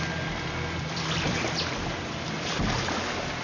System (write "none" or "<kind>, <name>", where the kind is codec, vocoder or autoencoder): none